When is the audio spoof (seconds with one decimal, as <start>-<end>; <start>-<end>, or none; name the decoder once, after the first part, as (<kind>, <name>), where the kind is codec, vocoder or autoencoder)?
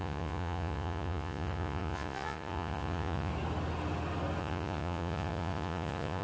0.0-3.3 (vocoder, Vocos); 4.4-6.2